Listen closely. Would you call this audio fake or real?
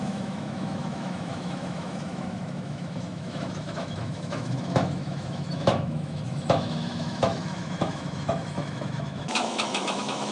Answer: fake